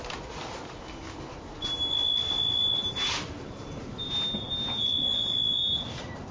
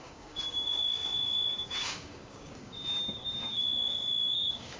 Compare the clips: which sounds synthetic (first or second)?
second